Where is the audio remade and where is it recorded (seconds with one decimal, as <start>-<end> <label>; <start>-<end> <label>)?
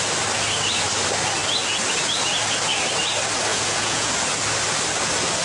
0.0-3.5 recorded; 3.5-4.1 remade; 4.1-5.4 recorded